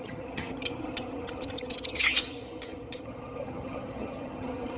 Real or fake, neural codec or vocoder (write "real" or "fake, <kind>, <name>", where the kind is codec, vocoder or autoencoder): fake, vocoder, HiFi-GAN